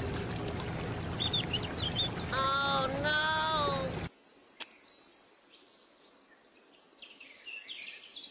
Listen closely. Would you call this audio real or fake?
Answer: real